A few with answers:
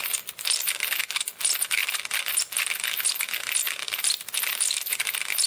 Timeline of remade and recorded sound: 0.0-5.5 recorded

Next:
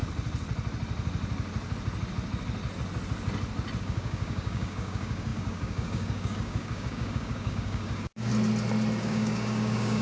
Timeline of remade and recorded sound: 0.0-3.8 recorded; 3.8-8.3 remade; 8.3-9.0 recorded; 9.0-10.0 remade

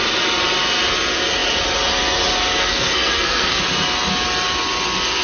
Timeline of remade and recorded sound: 0.0-2.6 recorded; 2.6-3.6 remade; 3.6-5.2 recorded

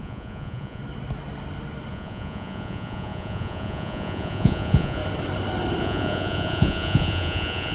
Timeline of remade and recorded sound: 0.0-0.8 remade; 0.8-1.9 recorded; 1.9-5.0 remade; 5.0-5.8 recorded; 5.8-7.7 remade

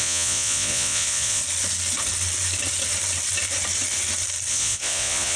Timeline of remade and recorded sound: 0.0-1.4 remade; 1.4-4.5 recorded; 4.5-5.4 remade

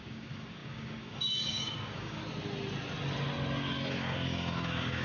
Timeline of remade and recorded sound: 0.0-2.2 remade; 2.2-3.9 recorded; 3.9-5.0 remade